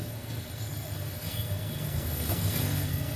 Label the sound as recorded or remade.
remade